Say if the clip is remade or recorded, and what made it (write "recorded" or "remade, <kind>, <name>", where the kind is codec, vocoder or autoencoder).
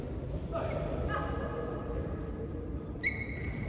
remade, vocoder, BigVGAN v2